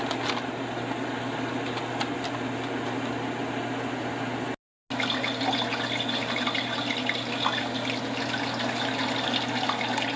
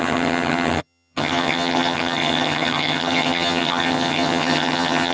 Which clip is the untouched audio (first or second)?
first